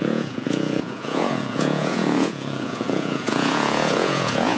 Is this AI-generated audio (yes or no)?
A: yes